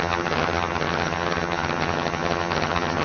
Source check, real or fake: fake